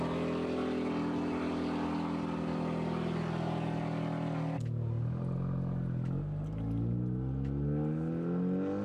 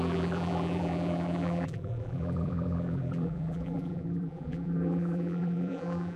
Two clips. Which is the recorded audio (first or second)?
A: first